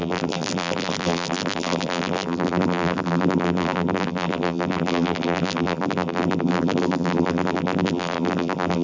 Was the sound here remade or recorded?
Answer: remade